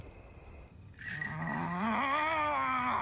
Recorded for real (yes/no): yes